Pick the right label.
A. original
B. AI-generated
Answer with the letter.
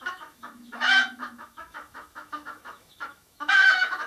B